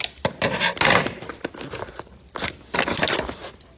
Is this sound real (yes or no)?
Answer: yes